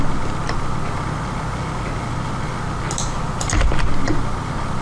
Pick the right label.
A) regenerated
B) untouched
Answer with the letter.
B